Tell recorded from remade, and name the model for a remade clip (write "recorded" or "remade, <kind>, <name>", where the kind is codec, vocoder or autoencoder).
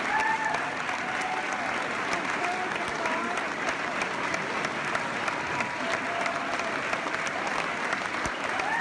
recorded